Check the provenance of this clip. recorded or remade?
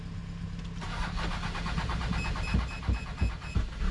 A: recorded